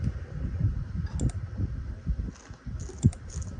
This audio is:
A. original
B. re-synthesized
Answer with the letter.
A